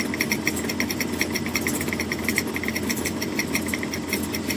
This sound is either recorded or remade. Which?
recorded